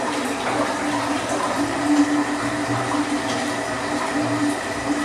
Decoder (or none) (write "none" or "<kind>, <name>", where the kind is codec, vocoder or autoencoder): vocoder, BigVGAN v2